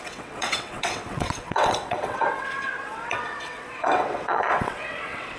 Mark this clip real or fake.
fake